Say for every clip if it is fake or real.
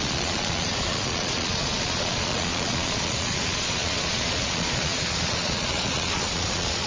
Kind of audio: fake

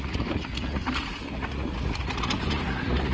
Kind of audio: fake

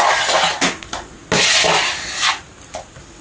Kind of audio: real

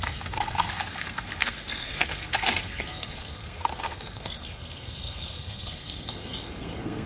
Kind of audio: fake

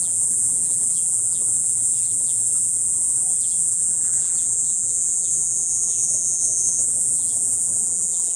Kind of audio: fake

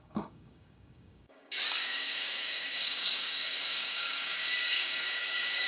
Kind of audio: fake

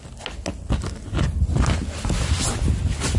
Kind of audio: real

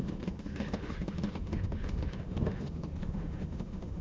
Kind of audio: fake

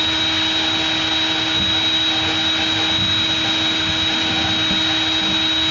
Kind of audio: real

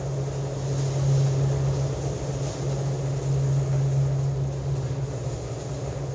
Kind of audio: real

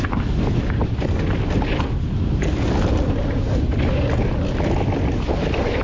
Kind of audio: real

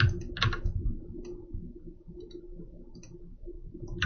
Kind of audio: real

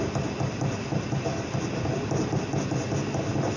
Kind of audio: real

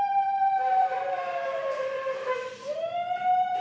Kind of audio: fake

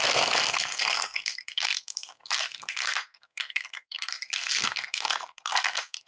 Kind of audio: fake